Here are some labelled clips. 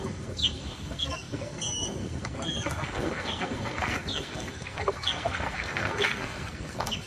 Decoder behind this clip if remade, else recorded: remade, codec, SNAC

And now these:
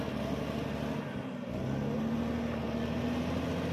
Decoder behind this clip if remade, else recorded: recorded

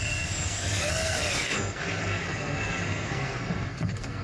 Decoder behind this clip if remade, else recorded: remade, codec, SNAC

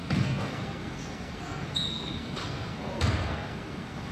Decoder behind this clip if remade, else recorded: remade, codec, SNAC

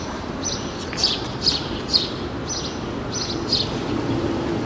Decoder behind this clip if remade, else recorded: recorded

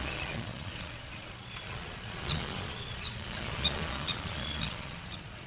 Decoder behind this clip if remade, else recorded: remade, vocoder, Vocos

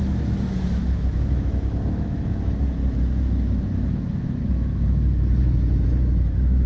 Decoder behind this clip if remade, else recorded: remade, autoencoder, DAC-VAE